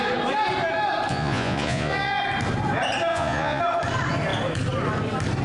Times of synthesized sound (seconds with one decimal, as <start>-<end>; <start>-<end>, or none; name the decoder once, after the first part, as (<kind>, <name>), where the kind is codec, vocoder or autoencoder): 1.1-2.2 (vocoder, Vocos); 3.1-3.6